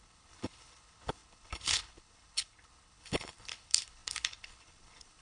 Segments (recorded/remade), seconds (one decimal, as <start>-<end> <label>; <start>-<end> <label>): 0.0-5.2 remade